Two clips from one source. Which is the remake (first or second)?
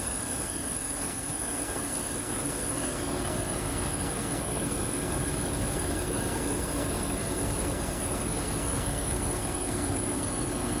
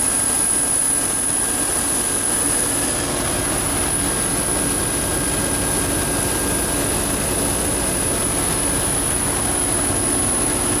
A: first